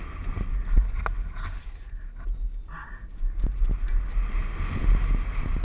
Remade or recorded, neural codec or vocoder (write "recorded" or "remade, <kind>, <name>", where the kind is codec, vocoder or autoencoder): recorded